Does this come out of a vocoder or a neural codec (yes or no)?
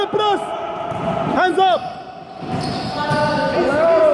no